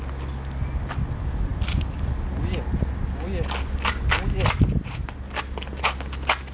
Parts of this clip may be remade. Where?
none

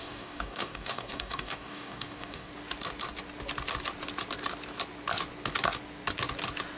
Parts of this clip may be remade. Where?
0.0-2.5 (codec, DAC)

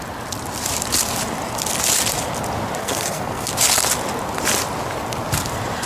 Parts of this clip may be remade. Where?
2.8-3.5 (codec, SNAC)

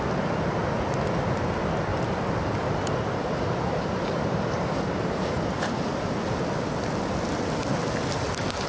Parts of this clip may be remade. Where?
1.9-5.6 (vocoder, BigVGAN v2)

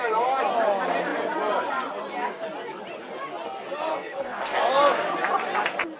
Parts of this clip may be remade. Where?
3.9-4.7 (codec, SNAC)

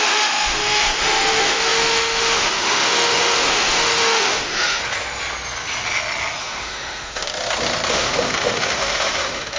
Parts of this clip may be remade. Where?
0.0-4.8 (autoencoder, DAC-VAE); 6.4-7.3; 7.9-9.6

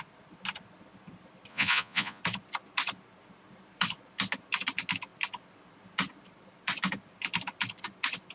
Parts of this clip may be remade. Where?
1.5-2.2 (vocoder, Vocos)